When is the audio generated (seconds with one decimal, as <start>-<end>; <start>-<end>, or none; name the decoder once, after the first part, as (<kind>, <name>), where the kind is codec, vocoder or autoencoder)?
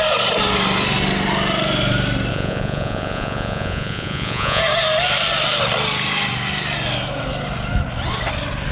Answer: 2.3-4.6 (vocoder, Vocos)